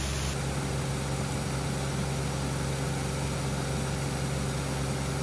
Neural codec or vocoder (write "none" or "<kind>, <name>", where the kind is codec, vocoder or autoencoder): none